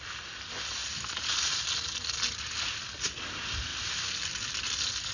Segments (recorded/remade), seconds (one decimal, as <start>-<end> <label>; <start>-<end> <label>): 0.0-5.1 recorded